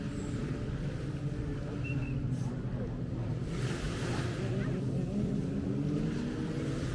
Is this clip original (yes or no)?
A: yes